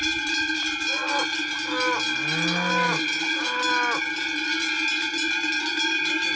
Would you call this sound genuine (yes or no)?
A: yes